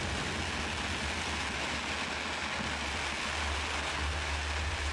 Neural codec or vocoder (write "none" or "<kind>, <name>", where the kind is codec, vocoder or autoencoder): none